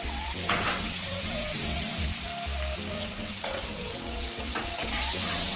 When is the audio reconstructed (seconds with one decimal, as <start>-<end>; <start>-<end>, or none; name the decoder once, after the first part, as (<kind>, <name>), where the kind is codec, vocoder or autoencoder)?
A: 0.0-2.3 (vocoder, WaveNeXt); 2.9-5.6